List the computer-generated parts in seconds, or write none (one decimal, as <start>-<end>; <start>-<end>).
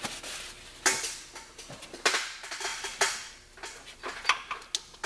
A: none